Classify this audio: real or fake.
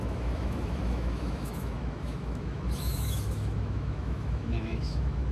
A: fake